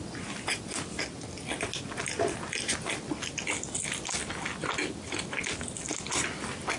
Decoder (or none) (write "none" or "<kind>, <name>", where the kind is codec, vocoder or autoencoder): none